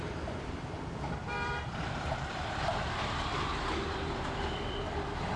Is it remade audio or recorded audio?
remade